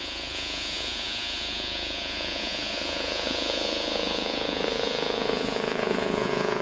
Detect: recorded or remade remade